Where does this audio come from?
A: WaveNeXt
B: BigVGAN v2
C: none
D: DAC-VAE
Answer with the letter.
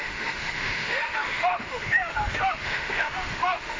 D